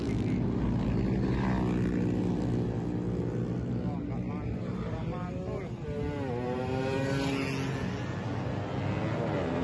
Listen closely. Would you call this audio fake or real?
real